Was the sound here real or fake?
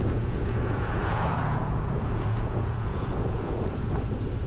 fake